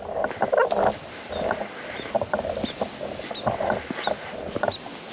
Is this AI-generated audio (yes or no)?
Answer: no